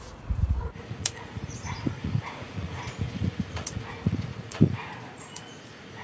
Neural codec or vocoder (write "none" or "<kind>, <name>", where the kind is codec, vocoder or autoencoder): vocoder, Vocos